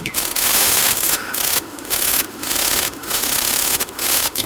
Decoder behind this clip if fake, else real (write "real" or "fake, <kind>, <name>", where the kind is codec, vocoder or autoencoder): fake, autoencoder, DAC-VAE